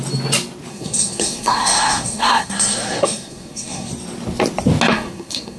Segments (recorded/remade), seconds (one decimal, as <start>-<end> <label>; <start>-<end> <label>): 0.0-0.7 recorded; 0.7-3.9 remade; 3.9-4.9 recorded; 4.9-5.6 remade